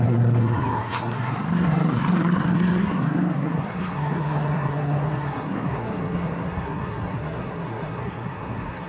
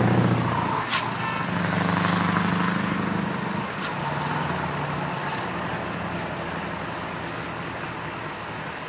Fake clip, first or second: first